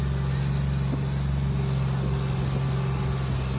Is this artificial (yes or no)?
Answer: no